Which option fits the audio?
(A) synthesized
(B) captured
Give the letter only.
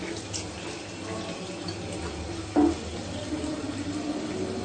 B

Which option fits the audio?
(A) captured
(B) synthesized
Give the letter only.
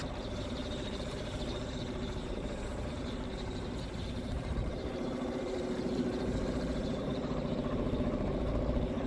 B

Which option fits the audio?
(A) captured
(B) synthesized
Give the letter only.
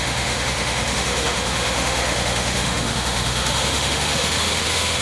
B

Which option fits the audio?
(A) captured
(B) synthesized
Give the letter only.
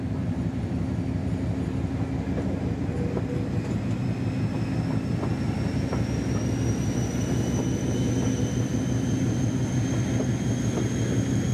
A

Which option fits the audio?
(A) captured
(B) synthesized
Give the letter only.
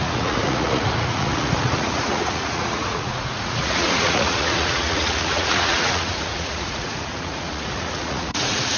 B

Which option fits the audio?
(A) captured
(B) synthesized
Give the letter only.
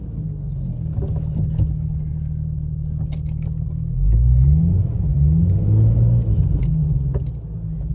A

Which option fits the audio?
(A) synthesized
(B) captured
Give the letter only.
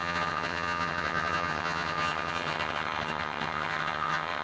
A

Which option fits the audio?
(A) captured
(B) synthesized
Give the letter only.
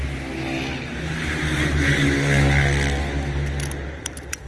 A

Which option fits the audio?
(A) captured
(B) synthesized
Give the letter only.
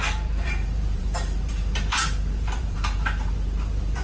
B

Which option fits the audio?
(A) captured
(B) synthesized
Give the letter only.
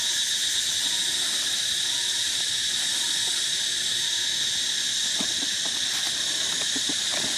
A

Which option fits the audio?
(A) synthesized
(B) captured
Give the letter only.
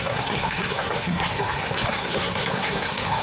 A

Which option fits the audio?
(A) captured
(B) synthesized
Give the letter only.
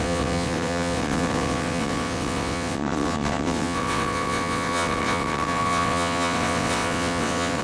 B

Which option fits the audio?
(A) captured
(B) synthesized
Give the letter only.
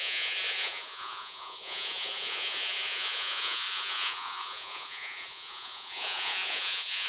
B